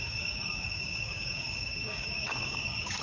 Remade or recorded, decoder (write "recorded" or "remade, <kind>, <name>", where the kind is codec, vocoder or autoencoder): remade, codec, DAC